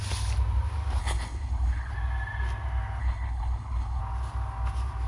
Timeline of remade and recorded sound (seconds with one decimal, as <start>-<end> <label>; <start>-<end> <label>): 0.0-1.0 recorded; 1.0-1.9 remade; 1.9-3.0 recorded; 3.0-4.0 remade; 4.0-5.1 recorded